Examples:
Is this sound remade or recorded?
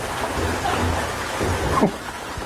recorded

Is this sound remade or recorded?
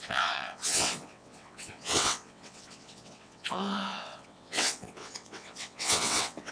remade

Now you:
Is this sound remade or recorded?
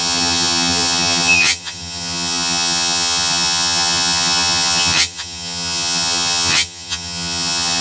remade